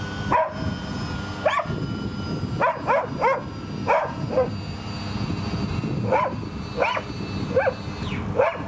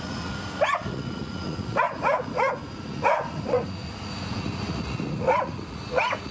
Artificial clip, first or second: second